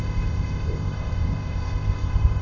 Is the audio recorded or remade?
remade